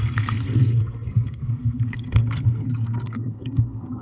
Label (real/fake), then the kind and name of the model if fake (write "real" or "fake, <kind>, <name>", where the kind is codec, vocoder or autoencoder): fake, codec, SNAC